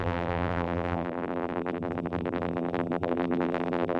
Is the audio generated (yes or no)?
yes